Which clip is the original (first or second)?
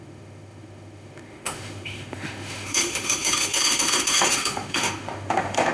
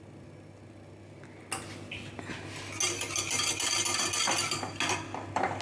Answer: second